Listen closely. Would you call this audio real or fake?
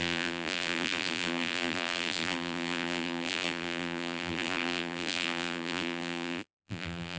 fake